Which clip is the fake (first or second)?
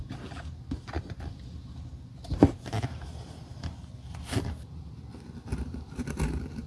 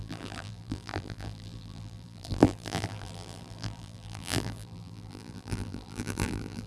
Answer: second